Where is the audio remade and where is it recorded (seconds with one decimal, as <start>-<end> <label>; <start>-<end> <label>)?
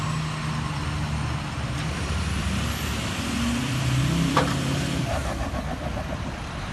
0.0-2.4 recorded; 2.4-6.1 remade; 6.1-6.7 recorded